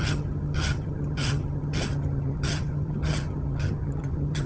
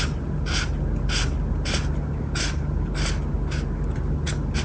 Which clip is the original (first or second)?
second